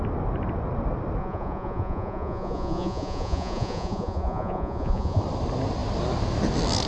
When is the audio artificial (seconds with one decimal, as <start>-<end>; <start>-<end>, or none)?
1.2-5.2